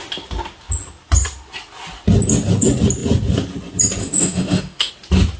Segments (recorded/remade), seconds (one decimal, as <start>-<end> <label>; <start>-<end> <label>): 0.0-4.0 recorded; 4.0-4.9 remade; 4.9-5.4 recorded